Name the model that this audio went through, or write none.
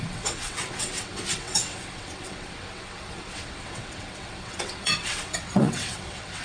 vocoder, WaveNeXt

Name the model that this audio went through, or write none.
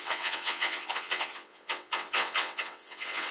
vocoder, WaveNeXt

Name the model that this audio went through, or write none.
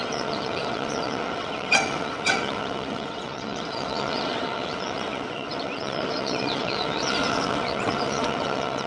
vocoder, WaveNeXt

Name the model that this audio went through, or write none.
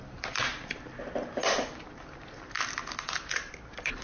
none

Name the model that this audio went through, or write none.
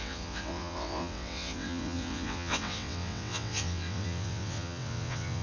vocoder, WaveNeXt